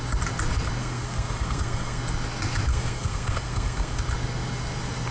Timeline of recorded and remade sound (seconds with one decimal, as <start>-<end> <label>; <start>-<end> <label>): 0.0-0.8 recorded; 0.8-2.0 remade; 2.0-2.7 recorded; 2.7-4.0 remade; 4.0-5.1 recorded